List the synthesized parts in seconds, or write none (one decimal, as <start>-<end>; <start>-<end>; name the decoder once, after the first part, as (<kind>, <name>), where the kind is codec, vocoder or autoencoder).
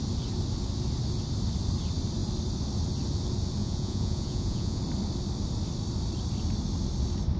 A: 3.6-4.8 (vocoder, Vocos)